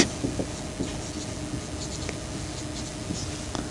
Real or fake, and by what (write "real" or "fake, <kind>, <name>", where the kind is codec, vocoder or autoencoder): real